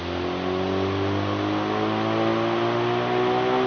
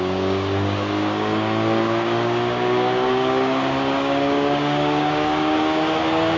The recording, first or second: first